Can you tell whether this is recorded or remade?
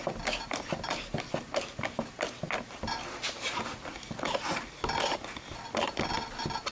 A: recorded